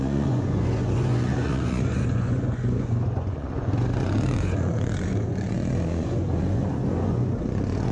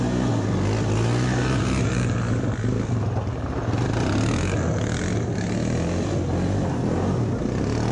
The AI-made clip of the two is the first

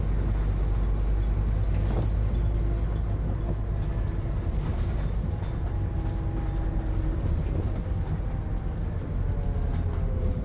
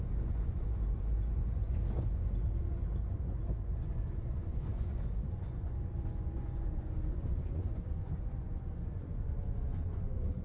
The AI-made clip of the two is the second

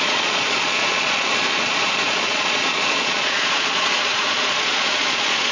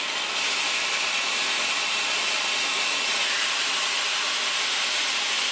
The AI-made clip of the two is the first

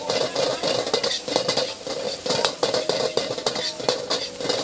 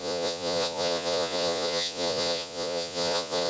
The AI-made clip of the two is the second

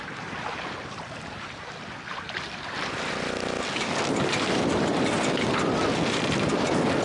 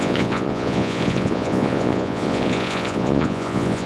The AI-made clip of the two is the second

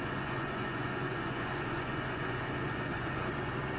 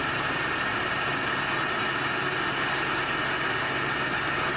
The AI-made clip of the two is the first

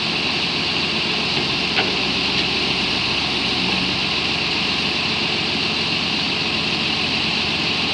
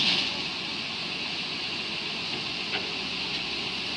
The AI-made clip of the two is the second